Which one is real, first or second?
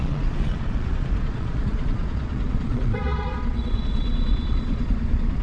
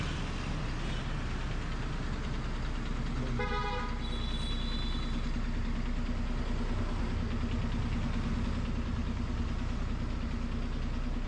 second